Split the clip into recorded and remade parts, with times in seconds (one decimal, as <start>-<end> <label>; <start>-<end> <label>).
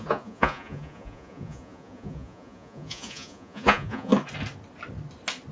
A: 0.0-4.1 remade; 4.1-5.5 recorded